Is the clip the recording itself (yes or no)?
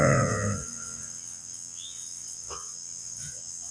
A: no